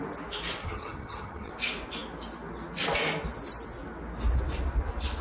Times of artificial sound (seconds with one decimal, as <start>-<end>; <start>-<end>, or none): 0.6-1.5